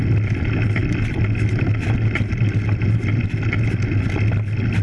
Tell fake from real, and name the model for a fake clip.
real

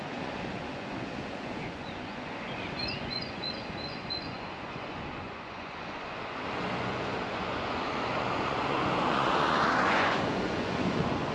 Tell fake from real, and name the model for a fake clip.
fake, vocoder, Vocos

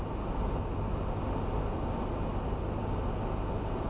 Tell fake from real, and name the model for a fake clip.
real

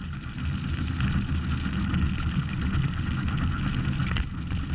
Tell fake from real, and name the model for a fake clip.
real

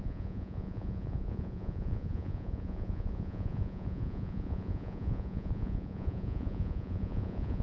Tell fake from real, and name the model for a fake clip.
fake, vocoder, Vocos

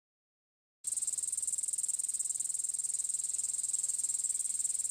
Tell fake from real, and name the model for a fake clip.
real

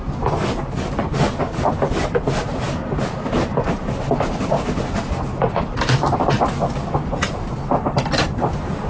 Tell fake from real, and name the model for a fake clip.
real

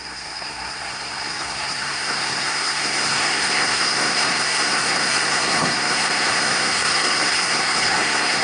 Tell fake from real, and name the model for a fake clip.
fake, codec, SNAC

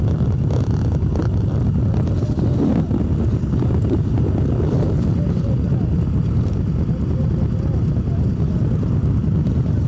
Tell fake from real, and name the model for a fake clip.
real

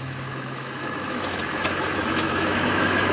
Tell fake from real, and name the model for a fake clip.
fake, autoencoder, DAC-VAE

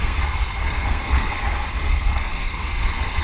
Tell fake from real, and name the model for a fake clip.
fake, codec, SNAC